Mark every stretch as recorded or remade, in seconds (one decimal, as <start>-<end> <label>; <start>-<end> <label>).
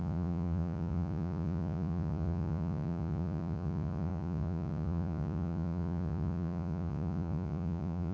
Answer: 0.0-8.1 remade